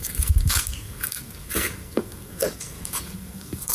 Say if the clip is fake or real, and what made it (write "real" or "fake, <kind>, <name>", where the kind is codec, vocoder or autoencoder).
fake, codec, SNAC